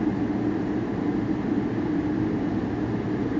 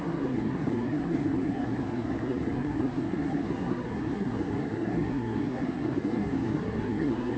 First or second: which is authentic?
first